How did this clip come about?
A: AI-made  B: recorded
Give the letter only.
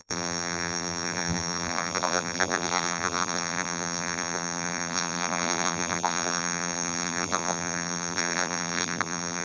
A